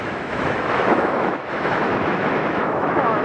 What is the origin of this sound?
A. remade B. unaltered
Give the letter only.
A